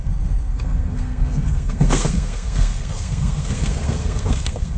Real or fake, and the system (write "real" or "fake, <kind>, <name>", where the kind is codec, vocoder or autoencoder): fake, codec, SNAC